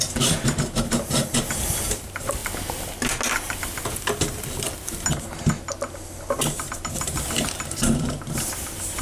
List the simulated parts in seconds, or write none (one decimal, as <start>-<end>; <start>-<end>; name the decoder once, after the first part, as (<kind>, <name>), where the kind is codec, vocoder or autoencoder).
0.0-2.4 (vocoder, BigVGAN v2); 6.4-9.0

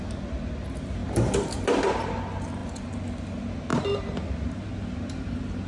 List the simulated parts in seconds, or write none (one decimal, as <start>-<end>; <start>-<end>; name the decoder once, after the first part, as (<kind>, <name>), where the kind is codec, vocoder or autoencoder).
1.0-2.2 (vocoder, BigVGAN v2); 3.7-5.7